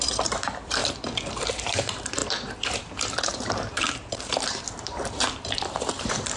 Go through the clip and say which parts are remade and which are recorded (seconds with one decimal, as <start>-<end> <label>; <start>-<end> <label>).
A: 0.0-0.8 remade; 0.8-1.3 recorded; 1.3-6.4 remade